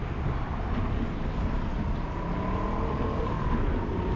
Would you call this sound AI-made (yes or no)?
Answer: no